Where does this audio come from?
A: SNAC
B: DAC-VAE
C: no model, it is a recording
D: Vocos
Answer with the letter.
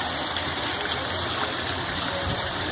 C